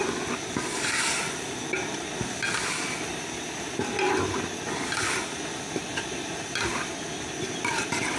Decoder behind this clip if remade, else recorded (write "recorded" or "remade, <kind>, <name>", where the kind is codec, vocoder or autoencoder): recorded